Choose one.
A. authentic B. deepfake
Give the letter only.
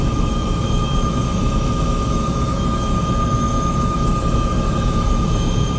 B